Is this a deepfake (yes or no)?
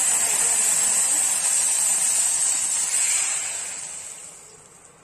no